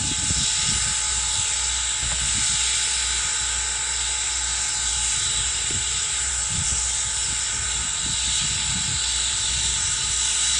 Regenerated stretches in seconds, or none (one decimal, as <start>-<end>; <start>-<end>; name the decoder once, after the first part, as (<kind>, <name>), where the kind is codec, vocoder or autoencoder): 4.9-6.3 (vocoder, BigVGAN v2)